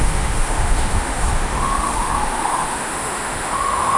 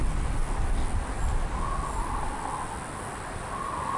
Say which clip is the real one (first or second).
second